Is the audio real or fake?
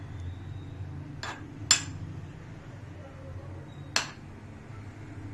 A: real